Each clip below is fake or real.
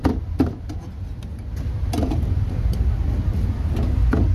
real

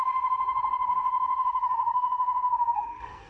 fake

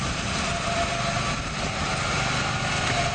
real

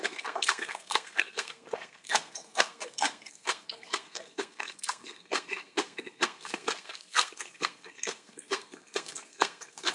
fake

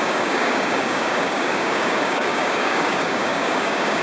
fake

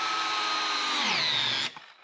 real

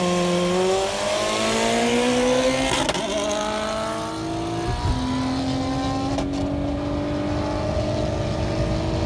real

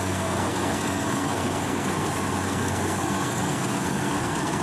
fake